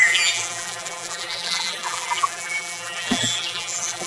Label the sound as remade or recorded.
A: remade